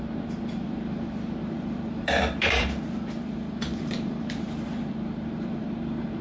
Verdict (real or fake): fake